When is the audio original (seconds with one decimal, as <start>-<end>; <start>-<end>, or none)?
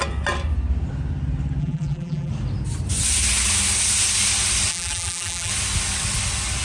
0.0-1.6; 2.3-4.7; 5.5-6.6